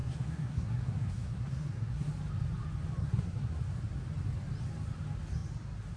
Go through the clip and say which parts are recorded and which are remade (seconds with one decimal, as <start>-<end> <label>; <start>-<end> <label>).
0.0-2.1 remade; 2.1-3.0 recorded; 3.0-3.6 remade; 3.6-6.0 recorded